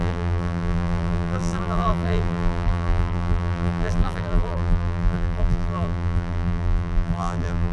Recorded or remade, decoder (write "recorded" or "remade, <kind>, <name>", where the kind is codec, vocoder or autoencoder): remade, vocoder, BigVGAN v2